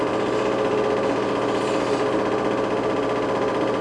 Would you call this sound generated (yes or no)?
no